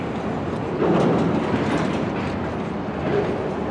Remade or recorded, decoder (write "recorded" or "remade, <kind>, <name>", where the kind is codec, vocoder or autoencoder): recorded